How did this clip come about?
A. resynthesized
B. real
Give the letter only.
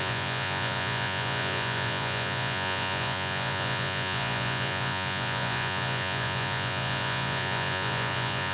A